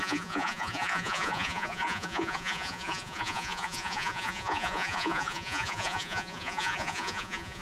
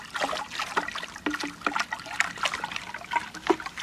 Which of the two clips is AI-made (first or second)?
first